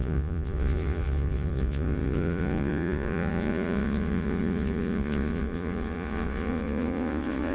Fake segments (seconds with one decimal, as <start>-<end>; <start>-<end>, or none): 0.0-7.5